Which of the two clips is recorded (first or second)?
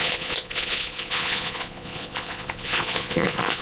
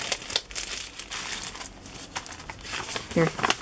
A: second